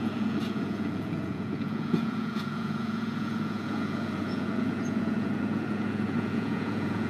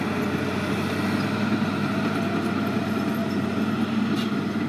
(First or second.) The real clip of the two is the second